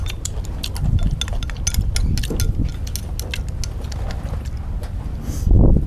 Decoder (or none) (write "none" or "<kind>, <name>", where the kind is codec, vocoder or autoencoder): none